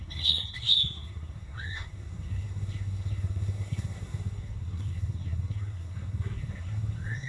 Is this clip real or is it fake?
fake